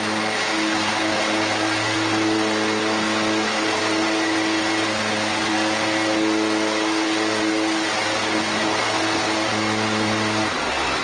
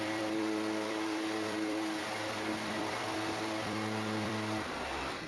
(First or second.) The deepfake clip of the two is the second